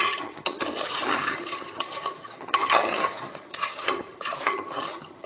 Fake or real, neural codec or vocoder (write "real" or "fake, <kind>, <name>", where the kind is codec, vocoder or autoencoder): fake, vocoder, HiFi-GAN